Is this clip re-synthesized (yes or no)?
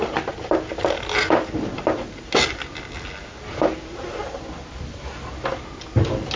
no